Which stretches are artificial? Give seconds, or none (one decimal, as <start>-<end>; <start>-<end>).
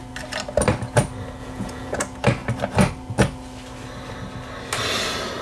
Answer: 1.4-2.0